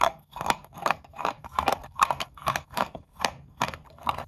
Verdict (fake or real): fake